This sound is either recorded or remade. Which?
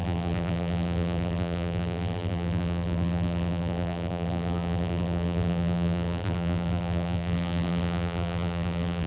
remade